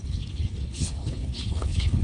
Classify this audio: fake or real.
fake